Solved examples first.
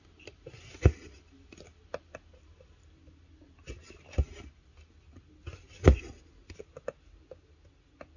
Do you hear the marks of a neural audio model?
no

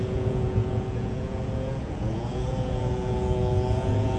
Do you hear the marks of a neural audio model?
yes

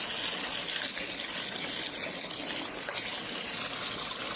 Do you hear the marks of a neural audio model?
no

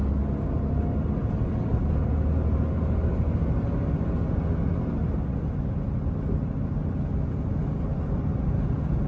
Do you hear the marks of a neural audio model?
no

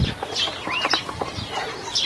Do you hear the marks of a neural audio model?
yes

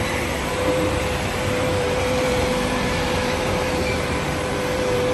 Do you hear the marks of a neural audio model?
yes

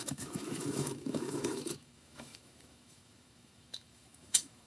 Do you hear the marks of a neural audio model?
yes